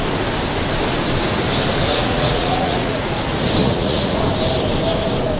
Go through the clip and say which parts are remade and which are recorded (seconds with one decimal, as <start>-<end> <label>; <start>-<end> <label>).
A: 0.0-1.9 recorded; 1.9-3.1 remade; 3.1-3.6 recorded; 3.6-4.2 remade; 4.2-5.4 recorded